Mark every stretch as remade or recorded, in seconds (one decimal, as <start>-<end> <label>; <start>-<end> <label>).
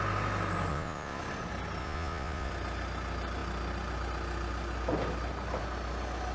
0.0-0.7 recorded; 0.7-1.2 remade; 1.2-1.8 recorded; 1.8-2.5 remade; 2.5-6.3 recorded